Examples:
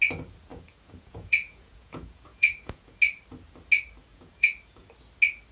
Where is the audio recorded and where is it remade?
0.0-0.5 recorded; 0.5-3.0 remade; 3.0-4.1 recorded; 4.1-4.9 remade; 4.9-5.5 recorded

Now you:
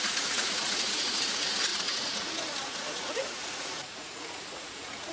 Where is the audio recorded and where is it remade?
0.0-5.1 remade

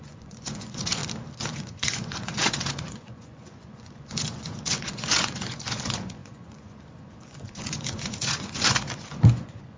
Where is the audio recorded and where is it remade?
0.0-1.0 remade; 1.0-1.5 recorded; 1.5-9.8 remade

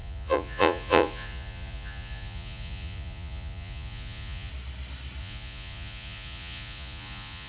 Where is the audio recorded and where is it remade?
0.0-4.5 remade; 4.5-5.2 recorded; 5.2-7.5 remade

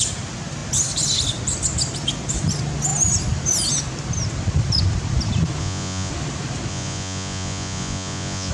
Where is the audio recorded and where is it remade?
0.0-5.6 recorded; 5.6-6.1 remade; 6.1-6.7 recorded; 6.7-8.5 remade

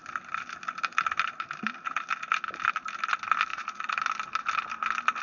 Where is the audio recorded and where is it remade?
0.0-3.5 recorded; 3.5-4.0 remade; 4.0-5.2 recorded